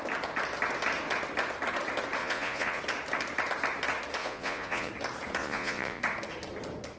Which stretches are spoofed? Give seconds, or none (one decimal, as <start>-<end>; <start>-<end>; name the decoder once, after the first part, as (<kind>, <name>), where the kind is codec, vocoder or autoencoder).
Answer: 2.2-2.8 (vocoder, Vocos); 4.2-4.9; 5.4-6.0